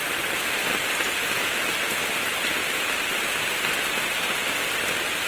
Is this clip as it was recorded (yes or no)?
yes